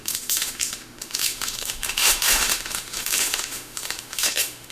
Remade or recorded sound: remade